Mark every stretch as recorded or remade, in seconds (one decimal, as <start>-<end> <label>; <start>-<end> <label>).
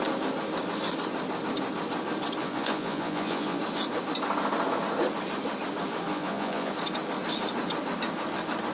0.0-2.4 recorded; 2.4-3.6 remade; 3.6-6.1 recorded; 6.1-6.7 remade; 6.7-8.7 recorded